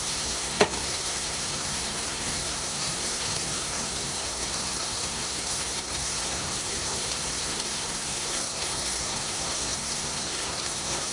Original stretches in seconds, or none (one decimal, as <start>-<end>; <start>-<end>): none